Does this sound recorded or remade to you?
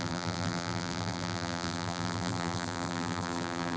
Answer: remade